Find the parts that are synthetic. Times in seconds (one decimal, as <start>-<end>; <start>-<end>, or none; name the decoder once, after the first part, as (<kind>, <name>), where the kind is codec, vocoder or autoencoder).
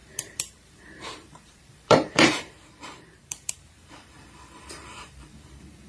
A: 0.0-5.9 (vocoder, BigVGAN v2)